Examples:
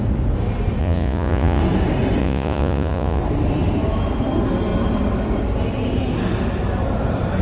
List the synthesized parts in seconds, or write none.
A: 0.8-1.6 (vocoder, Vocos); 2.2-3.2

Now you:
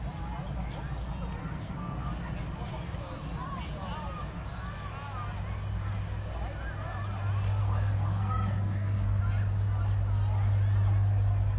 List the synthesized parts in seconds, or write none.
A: 1.4-2.1 (codec, SNAC); 7.6-9.2

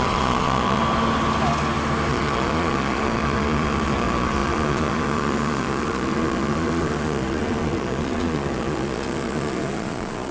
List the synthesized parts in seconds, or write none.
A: 0.0-0.8 (vocoder, Vocos); 2.1-10.3

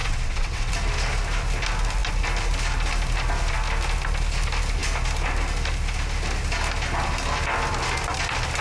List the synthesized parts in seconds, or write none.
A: 0.0-0.7 (vocoder, WaveNeXt)

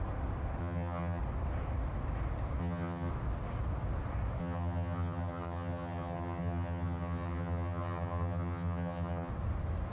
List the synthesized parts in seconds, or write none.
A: 0.6-1.2 (vocoder, HiFi-GAN); 2.6-3.1; 4.4-9.3

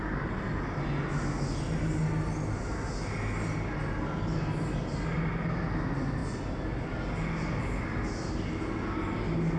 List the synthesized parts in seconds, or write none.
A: none

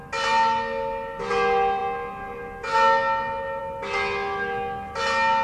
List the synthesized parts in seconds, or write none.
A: none

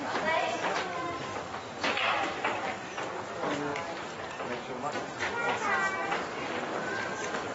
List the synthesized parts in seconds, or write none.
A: none